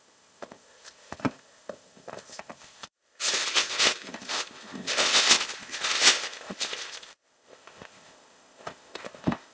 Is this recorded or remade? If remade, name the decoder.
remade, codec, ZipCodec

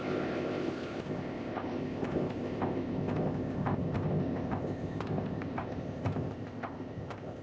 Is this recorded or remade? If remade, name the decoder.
remade, codec, ZipCodec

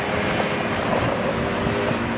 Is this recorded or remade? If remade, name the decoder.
recorded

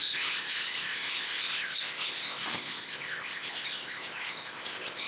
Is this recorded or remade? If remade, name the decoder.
remade, codec, ZipCodec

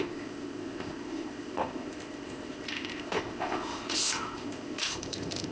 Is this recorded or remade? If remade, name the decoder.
remade, codec, ZipCodec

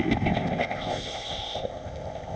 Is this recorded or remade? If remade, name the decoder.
remade, codec, ZipCodec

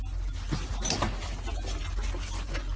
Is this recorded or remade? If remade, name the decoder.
recorded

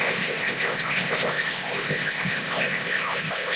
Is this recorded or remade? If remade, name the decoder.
remade, codec, ZipCodec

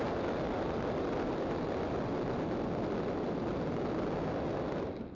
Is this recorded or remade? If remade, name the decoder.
recorded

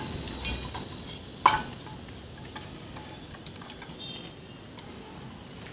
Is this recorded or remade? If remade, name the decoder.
recorded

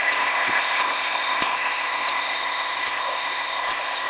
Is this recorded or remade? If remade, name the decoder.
remade, codec, ZipCodec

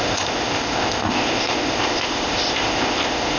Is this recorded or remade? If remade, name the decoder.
remade, codec, ZipCodec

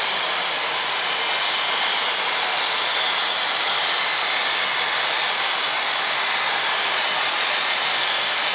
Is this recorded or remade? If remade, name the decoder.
recorded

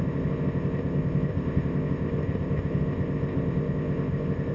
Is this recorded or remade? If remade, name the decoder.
remade, codec, ZipCodec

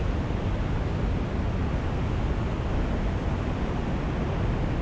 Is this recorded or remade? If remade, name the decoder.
recorded